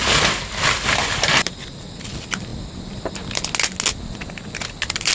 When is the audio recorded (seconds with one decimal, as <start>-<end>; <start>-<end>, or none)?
2.1-5.1